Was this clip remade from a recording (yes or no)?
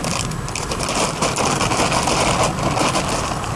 no